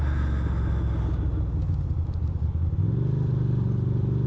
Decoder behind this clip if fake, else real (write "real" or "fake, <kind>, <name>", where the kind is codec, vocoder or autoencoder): real